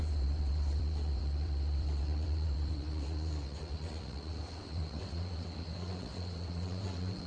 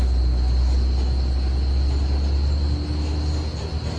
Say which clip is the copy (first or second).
first